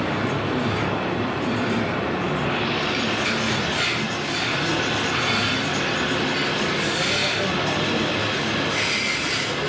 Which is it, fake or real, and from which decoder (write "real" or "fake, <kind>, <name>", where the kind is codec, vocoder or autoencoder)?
real